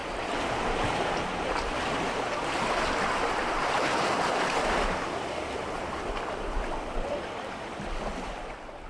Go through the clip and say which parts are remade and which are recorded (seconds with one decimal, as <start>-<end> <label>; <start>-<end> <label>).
0.0-4.6 remade; 4.6-8.9 recorded

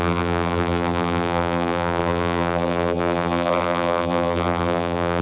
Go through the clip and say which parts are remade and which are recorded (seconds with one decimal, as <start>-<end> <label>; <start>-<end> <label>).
0.0-5.2 remade

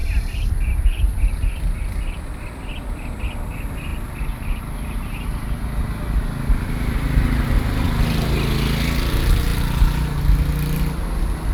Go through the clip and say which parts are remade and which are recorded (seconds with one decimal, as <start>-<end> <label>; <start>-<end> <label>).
0.0-3.2 remade; 3.2-11.5 recorded

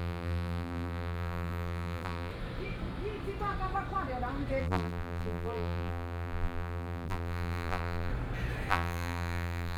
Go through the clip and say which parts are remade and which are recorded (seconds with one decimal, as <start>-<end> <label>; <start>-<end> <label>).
0.0-2.3 remade; 2.3-4.6 recorded; 4.6-8.1 remade; 8.1-8.7 recorded; 8.7-9.8 remade

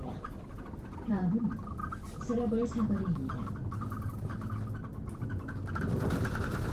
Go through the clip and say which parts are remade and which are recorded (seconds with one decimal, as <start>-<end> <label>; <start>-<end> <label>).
0.0-1.8 remade; 1.8-5.8 recorded; 5.8-6.7 remade

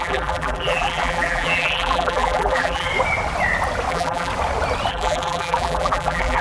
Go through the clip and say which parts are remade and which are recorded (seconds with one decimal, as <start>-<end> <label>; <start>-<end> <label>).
0.0-2.9 remade; 2.9-3.9 recorded; 3.9-4.3 remade; 4.3-4.9 recorded; 4.9-6.4 remade

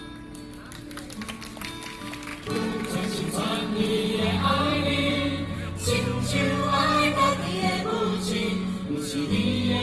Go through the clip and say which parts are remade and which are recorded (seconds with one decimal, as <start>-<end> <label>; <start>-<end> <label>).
0.0-2.3 recorded; 2.3-5.7 remade; 5.7-9.8 recorded